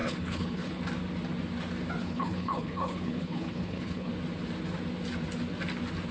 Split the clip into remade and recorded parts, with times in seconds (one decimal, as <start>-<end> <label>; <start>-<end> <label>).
0.0-0.8 remade; 0.8-2.0 recorded; 2.0-4.1 remade; 4.1-6.1 recorded